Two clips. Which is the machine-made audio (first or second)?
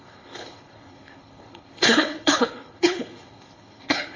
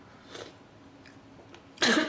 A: first